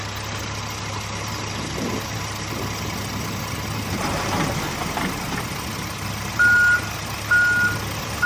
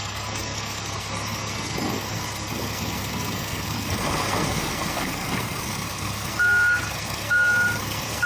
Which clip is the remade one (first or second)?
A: second